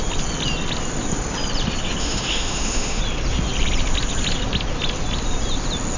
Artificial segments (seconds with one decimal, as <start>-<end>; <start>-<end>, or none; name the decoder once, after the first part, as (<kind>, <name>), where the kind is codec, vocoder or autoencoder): 2.0-3.0 (autoencoder, DAC-VAE)